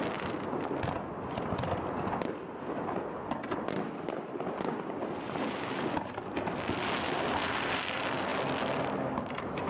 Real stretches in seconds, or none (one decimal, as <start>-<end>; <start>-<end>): 0.0-9.7